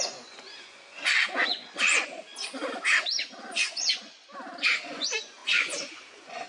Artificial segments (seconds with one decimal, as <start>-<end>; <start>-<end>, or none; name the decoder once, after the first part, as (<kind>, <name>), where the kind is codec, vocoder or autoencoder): 0.0-2.4 (vocoder, Vocos); 3.4-4.2; 4.8-6.5